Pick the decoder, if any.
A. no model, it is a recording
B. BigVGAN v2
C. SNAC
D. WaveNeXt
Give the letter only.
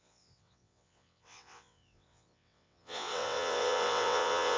D